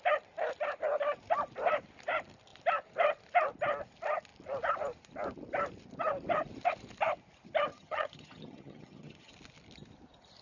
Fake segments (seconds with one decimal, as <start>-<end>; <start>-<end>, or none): 7.7-9.3

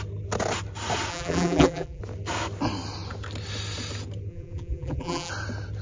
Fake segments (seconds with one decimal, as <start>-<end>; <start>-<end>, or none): 1.1-2.0; 4.3-5.3

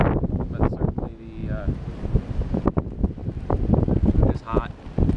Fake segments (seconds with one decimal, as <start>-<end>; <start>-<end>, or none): none

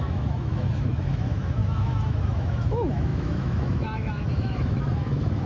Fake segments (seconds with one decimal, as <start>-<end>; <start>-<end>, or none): 0.0-5.5

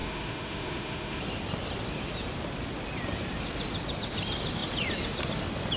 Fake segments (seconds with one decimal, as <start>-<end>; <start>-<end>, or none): 0.0-1.2

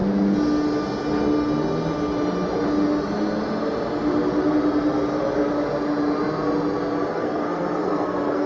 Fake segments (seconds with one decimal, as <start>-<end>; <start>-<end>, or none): 7.1-8.5

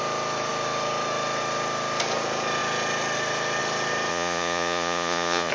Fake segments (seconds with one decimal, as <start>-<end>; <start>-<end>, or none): 4.1-5.5

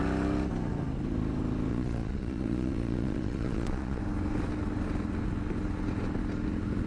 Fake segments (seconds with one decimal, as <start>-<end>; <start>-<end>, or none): 1.7-4.0